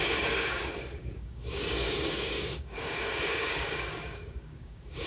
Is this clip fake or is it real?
fake